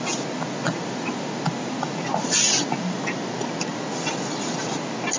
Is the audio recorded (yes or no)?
yes